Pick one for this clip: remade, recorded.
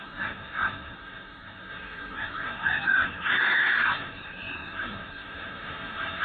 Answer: remade